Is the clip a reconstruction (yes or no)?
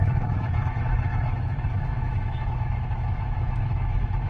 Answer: yes